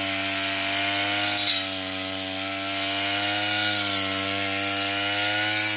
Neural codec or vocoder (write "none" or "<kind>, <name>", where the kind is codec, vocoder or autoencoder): none